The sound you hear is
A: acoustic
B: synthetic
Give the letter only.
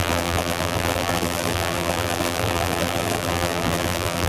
B